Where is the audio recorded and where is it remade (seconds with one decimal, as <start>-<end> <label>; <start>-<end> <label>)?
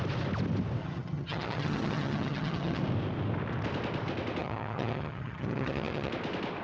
0.0-0.8 recorded; 0.8-2.8 remade; 2.8-4.4 recorded; 4.4-6.1 remade; 6.1-6.6 recorded